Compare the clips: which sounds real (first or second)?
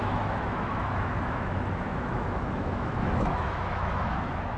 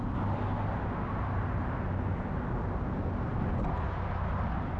second